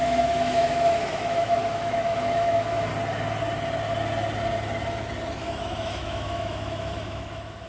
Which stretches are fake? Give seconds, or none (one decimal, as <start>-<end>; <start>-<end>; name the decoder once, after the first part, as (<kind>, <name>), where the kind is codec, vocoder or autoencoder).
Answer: 0.0-2.9 (autoencoder, DAC-VAE); 5.4-7.7

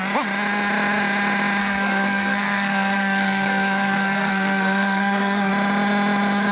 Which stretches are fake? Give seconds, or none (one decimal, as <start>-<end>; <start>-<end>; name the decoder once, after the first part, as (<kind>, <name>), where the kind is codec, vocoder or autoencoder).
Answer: 1.6-5.5 (codec, SNAC)

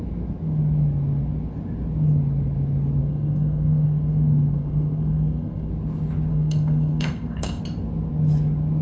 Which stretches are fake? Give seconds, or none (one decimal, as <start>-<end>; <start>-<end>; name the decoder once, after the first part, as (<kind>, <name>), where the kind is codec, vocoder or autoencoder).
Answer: 3.0-5.7 (codec, SNAC); 6.3-7.6

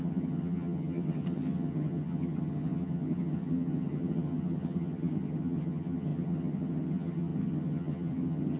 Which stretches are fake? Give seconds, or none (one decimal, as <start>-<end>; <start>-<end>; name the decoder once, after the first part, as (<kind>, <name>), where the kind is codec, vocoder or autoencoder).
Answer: 0.0-8.6 (vocoder, HiFi-GAN)

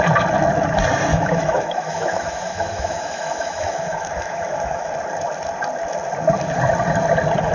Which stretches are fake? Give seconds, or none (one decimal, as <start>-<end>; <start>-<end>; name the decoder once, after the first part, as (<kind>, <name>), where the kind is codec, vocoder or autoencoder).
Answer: 1.1-4.9 (autoencoder, DAC-VAE)

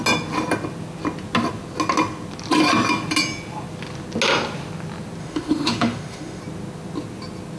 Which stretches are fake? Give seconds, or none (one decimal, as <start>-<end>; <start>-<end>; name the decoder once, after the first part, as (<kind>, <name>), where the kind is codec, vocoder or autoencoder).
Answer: 5.2-6.4 (autoencoder, DAC-VAE)